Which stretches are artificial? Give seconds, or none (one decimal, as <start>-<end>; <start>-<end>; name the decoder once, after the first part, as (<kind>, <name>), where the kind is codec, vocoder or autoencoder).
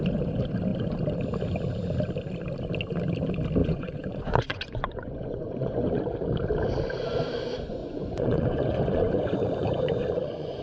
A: 3.6-6.0 (vocoder, Vocos); 7.8-10.6